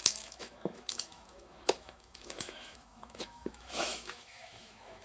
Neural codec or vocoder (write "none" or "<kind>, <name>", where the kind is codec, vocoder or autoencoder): autoencoder, DAC-VAE